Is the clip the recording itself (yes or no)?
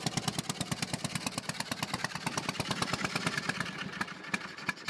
yes